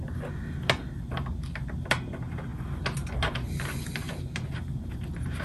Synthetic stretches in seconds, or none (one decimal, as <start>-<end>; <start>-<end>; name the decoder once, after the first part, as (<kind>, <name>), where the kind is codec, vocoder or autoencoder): none